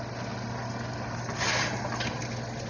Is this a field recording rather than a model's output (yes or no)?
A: yes